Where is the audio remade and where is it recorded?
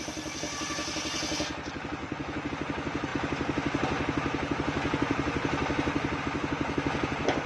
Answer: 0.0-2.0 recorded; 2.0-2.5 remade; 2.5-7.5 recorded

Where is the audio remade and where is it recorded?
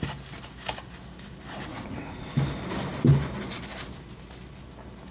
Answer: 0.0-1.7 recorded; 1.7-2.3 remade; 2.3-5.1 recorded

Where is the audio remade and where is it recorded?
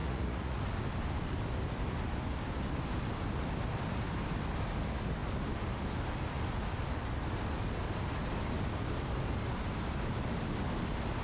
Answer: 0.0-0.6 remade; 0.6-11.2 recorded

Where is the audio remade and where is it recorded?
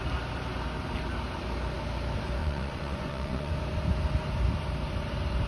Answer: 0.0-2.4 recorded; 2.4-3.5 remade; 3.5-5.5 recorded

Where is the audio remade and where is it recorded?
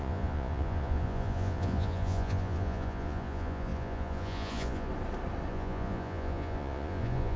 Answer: 0.0-4.9 remade; 4.9-5.5 recorded; 5.5-7.4 remade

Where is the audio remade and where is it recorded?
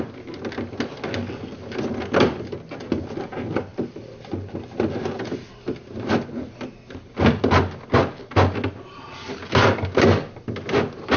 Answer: 0.0-11.2 recorded